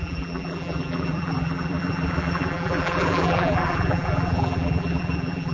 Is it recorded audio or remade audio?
remade